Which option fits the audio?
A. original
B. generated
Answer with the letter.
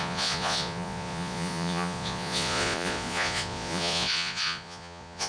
B